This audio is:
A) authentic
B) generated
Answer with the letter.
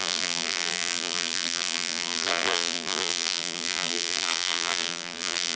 B